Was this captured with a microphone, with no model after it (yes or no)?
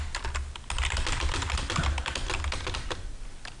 yes